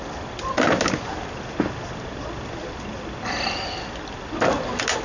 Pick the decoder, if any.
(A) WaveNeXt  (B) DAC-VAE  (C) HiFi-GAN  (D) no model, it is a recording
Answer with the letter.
D